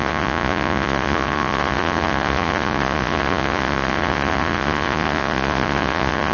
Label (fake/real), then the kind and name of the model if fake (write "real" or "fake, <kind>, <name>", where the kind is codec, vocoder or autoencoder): fake, vocoder, Vocos